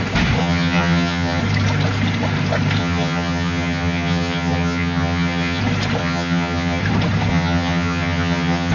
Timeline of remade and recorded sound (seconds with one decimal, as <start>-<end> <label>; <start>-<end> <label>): 0.0-0.4 recorded; 0.4-1.4 remade; 1.4-2.8 recorded; 2.8-5.6 remade; 5.6-6.0 recorded; 6.0-6.8 remade; 6.8-7.3 recorded; 7.3-8.7 remade